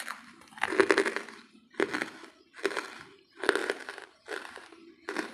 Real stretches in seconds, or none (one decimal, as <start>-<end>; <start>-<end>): 0.0-3.6

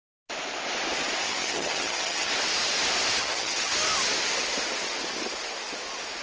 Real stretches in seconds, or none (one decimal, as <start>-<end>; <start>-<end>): 0.0-1.2; 2.3-3.2; 3.7-6.2

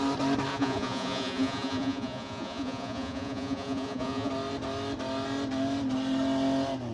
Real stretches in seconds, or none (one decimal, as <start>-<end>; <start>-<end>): 0.0-0.5; 4.3-6.9

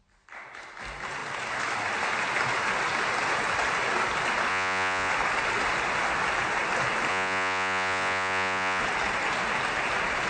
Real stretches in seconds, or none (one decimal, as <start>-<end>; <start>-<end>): 0.0-4.5; 5.1-7.1; 8.8-10.3

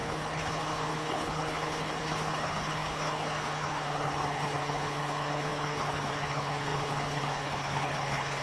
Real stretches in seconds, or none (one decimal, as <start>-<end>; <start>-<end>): none